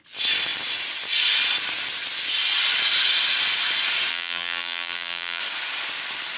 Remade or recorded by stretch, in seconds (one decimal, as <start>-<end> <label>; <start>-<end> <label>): 0.0-4.1 recorded; 4.1-5.4 remade; 5.4-6.4 recorded